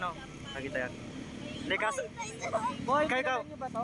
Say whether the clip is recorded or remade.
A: recorded